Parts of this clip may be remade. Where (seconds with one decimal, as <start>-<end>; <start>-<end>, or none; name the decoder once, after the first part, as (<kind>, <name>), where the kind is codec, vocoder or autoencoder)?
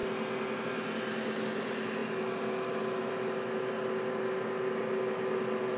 none